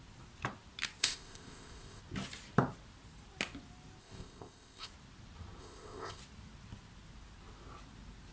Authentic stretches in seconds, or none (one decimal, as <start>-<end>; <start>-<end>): 0.0-1.0; 2.0-4.0; 4.9-5.6; 6.2-8.3